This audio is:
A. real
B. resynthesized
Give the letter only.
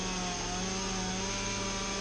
A